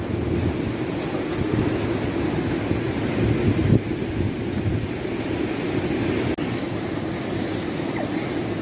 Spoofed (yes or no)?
no